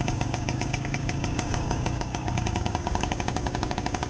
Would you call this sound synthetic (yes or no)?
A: yes